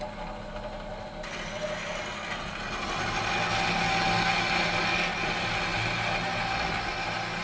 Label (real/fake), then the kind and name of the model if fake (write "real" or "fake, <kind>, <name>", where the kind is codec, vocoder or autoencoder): real